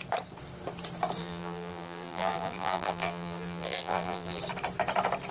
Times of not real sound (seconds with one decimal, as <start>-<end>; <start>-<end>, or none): 1.2-4.4